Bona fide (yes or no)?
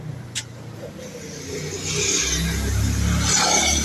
yes